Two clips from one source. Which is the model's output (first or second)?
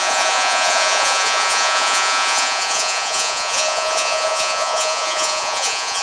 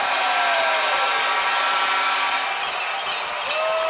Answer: first